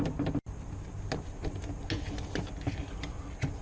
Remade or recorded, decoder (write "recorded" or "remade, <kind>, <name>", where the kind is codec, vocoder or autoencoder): recorded